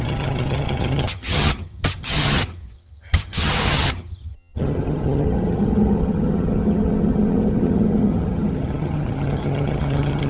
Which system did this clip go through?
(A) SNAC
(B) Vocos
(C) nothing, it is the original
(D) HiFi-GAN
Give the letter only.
D